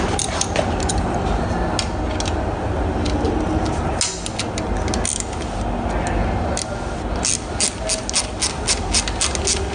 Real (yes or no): yes